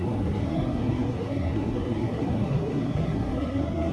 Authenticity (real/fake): fake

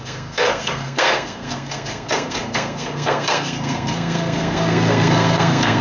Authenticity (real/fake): fake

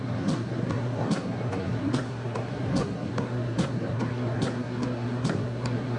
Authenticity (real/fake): fake